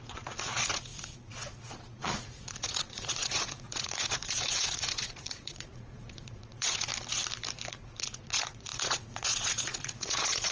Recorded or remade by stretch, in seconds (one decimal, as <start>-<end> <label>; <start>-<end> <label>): 0.0-6.9 remade; 6.9-7.7 recorded; 7.7-10.5 remade